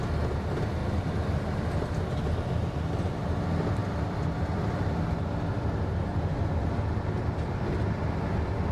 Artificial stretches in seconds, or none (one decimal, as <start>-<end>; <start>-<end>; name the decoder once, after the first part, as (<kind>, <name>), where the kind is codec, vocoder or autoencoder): 0.8-1.4 (vocoder, BigVGAN v2); 3.8-6.5